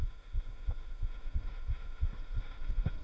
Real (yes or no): no